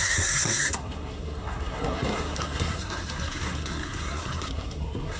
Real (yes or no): no